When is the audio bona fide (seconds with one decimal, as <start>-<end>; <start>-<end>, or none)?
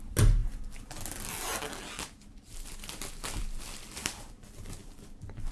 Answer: 0.0-5.5